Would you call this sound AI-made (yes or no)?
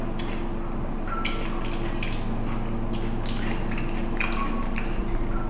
no